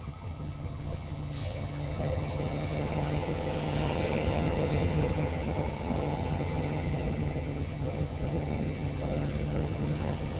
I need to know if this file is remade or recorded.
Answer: remade